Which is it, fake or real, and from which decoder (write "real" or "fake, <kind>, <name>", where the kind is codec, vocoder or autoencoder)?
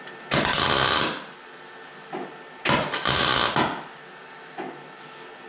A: real